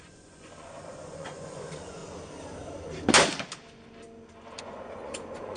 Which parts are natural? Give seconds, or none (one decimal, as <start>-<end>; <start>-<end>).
2.0-4.6